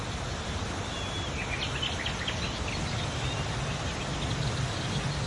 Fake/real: real